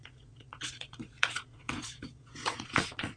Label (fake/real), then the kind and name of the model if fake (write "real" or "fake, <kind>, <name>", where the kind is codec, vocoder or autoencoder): fake, vocoder, Vocos